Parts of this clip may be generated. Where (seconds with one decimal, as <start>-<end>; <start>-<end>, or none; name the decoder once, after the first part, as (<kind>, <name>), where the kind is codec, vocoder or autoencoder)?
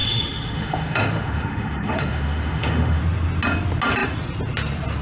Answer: 0.0-3.0 (autoencoder, DAC-VAE)